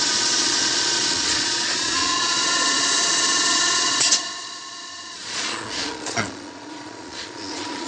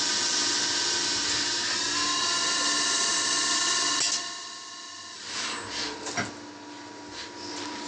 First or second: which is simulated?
first